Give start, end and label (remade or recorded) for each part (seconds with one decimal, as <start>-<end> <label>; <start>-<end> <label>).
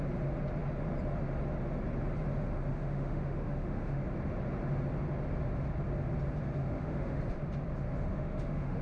0.0-2.7 recorded; 2.7-4.0 remade; 4.0-6.6 recorded; 6.6-7.2 remade; 7.2-8.1 recorded; 8.1-8.8 remade